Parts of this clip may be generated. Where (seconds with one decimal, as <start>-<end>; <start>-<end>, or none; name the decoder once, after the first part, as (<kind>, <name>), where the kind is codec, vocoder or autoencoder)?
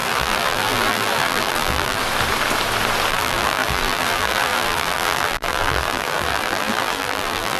0.0-2.0 (vocoder, BigVGAN v2); 3.1-7.6